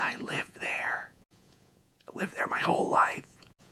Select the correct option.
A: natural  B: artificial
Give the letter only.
B